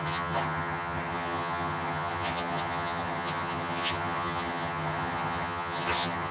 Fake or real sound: fake